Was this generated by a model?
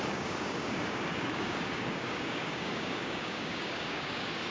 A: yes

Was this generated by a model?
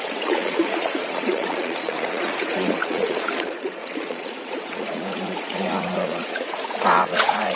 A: yes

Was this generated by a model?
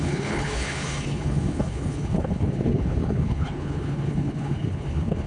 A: yes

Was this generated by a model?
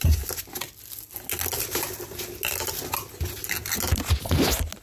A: no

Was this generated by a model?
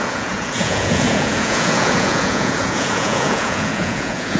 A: yes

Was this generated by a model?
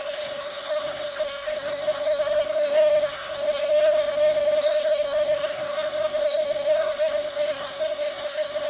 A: yes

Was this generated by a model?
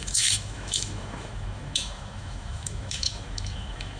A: yes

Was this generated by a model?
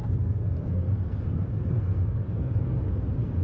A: yes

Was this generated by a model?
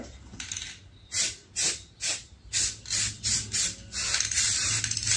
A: no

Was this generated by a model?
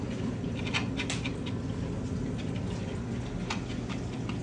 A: no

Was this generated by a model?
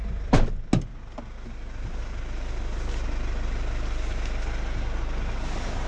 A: no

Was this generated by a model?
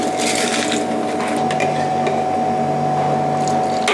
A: no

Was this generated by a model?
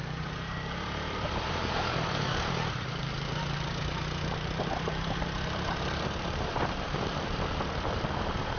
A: yes